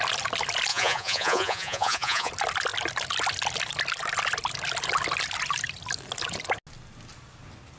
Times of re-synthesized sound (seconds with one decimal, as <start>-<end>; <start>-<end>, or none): 0.7-2.3